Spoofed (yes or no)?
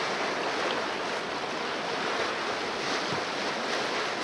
no